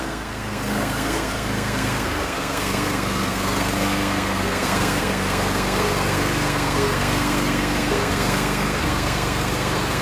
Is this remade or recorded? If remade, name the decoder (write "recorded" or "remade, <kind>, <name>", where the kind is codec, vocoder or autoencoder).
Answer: remade, codec, SNAC